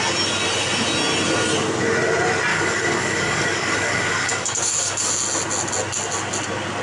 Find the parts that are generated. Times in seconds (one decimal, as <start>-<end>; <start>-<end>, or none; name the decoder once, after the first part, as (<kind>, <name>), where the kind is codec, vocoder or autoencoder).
2.5-5.1 (codec, DAC)